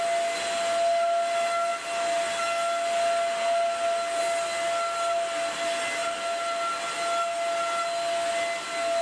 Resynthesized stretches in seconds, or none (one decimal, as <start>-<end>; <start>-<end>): none